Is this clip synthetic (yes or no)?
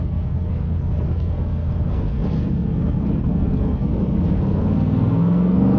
yes